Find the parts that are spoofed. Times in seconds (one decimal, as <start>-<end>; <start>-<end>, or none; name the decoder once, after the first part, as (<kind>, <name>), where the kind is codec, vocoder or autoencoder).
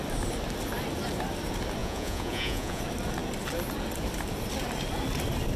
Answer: 1.8-2.8 (vocoder, Vocos)